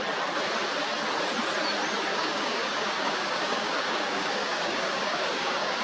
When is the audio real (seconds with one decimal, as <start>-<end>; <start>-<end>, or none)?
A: 0.0-2.1